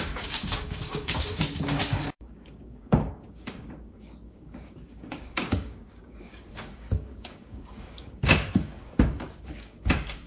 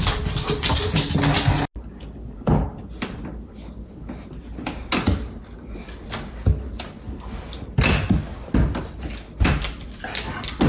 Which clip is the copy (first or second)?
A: first